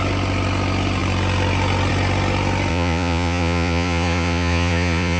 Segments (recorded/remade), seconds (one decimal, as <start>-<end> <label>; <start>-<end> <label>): 0.0-2.7 recorded; 2.7-5.2 remade

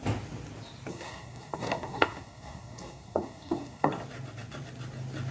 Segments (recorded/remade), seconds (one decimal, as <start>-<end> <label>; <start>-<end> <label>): 0.0-0.9 recorded; 0.9-3.9 remade; 3.9-5.3 recorded

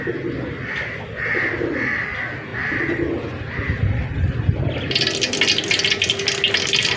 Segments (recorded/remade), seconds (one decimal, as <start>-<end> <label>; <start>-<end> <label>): 0.0-7.0 recorded

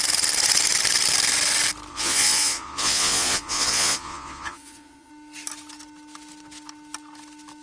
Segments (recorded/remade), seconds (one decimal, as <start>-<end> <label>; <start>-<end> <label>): 0.0-1.9 recorded; 1.9-5.1 remade; 5.1-7.6 recorded

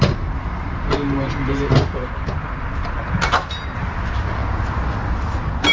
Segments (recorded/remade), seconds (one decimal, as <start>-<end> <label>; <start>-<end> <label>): 0.0-5.7 recorded

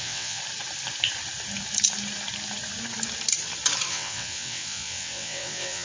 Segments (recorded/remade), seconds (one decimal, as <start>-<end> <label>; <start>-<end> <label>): 0.0-0.4 remade; 0.4-3.9 recorded; 3.9-5.8 remade